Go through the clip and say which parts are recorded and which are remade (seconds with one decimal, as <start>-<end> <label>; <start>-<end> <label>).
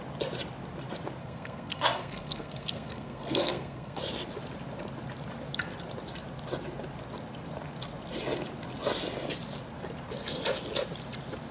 0.0-1.2 recorded; 1.2-4.0 remade; 4.0-11.5 recorded